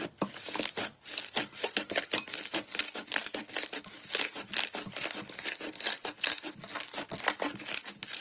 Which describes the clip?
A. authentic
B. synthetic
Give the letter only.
B